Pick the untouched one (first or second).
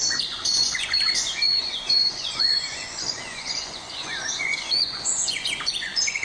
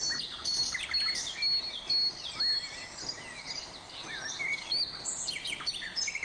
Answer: second